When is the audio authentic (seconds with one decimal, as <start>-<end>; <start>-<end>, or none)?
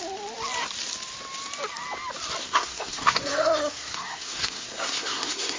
0.0-2.4